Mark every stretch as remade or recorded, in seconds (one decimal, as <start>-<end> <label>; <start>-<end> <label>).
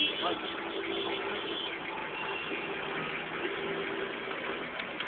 0.0-5.1 recorded